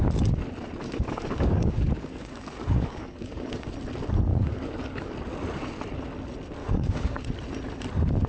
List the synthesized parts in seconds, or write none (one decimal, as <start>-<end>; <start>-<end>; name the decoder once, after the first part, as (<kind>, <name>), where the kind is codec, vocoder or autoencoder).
0.8-3.7 (codec, DAC); 4.3-5.1; 6.6-7.2